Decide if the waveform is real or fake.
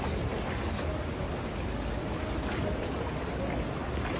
real